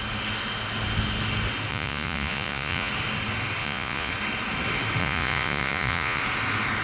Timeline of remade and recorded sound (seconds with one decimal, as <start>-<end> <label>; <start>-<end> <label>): 0.0-1.7 recorded; 1.7-2.9 remade; 2.9-3.6 recorded; 3.6-4.1 remade; 4.1-5.0 recorded; 5.0-6.2 remade; 6.2-6.8 recorded